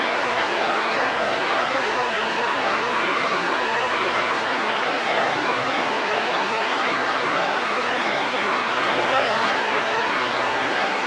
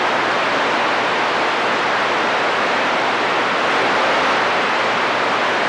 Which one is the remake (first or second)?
first